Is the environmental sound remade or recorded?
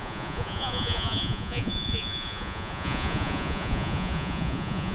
remade